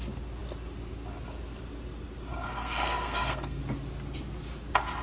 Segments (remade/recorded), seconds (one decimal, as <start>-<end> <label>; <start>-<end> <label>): 0.0-2.3 recorded; 2.3-3.6 remade; 3.6-5.0 recorded